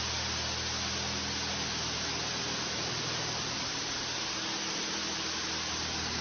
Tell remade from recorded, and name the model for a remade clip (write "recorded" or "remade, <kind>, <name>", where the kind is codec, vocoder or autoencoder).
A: recorded